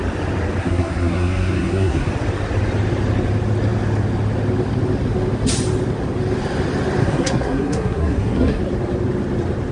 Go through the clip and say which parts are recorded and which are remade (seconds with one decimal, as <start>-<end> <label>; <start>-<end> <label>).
0.0-0.6 recorded; 0.6-2.1 remade; 2.1-7.0 recorded; 7.0-8.6 remade; 8.6-9.7 recorded